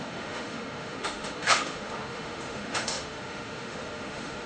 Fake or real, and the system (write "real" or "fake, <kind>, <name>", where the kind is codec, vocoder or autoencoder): fake, autoencoder, DAC-VAE